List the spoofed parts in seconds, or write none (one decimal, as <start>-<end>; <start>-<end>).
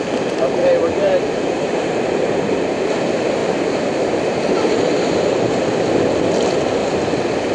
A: 0.6-2.4; 3.4-4.7; 6.8-7.5